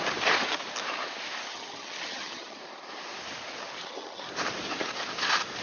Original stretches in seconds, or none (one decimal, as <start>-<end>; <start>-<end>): 0.0-1.5; 2.6-3.8; 4.3-5.6